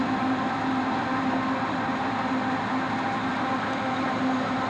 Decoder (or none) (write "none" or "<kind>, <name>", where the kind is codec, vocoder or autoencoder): none